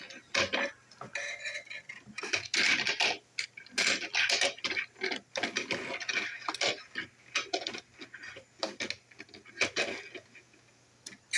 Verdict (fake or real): real